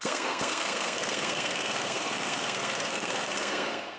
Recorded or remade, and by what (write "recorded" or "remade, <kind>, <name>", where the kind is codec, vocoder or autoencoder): remade, codec, SNAC